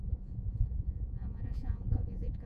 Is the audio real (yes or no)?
no